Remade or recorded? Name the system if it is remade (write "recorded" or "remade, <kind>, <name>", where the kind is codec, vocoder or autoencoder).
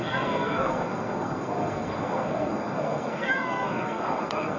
remade, codec, SNAC